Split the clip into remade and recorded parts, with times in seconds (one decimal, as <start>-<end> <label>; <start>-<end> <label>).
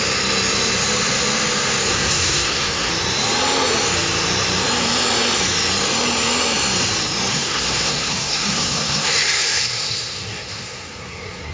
0.0-1.9 recorded; 1.9-2.9 remade; 2.9-7.3 recorded; 7.3-11.5 remade